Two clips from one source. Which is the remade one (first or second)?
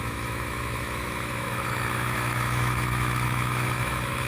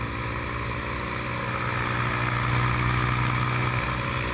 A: first